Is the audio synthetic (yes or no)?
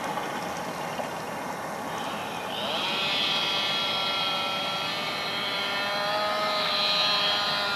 no